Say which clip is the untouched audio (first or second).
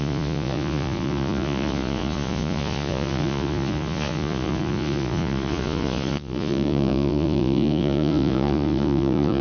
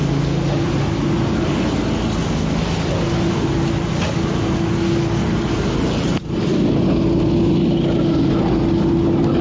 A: second